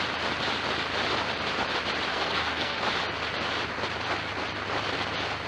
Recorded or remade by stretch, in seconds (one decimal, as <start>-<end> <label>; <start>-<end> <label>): 0.0-2.1 recorded; 2.1-2.8 remade; 2.8-5.5 recorded